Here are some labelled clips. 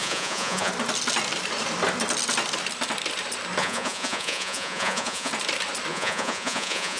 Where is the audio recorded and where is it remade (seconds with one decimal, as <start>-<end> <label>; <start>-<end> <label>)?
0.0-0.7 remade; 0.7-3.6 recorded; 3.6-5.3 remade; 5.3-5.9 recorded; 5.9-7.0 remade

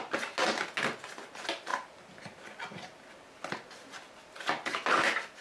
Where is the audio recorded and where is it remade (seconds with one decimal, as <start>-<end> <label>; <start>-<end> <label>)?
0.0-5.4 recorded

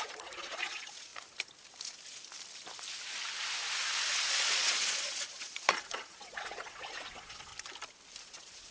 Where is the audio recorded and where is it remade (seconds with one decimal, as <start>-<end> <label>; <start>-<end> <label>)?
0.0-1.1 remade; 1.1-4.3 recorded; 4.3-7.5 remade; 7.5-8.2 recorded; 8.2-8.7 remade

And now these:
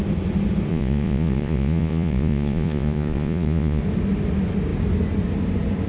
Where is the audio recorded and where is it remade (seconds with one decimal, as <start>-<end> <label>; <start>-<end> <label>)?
0.0-0.7 recorded; 0.7-3.8 remade; 3.8-5.9 recorded